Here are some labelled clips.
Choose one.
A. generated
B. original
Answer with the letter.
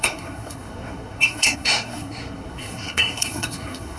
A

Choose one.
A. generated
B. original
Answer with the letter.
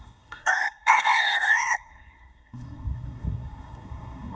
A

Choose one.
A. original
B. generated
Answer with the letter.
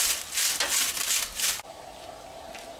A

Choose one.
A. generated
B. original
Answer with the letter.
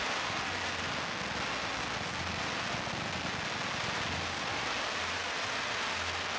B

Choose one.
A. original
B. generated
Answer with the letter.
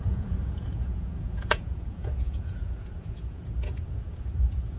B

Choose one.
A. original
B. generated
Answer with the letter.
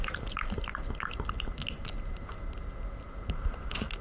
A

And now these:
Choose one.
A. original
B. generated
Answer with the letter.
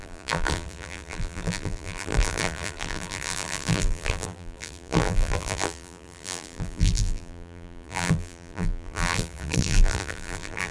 B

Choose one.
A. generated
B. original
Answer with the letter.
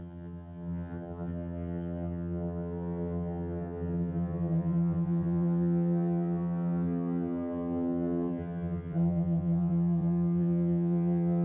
A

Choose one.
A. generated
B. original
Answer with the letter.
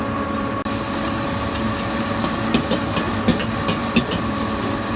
B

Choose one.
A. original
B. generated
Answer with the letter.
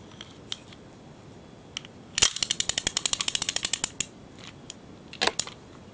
A